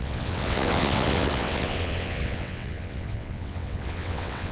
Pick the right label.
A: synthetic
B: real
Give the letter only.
A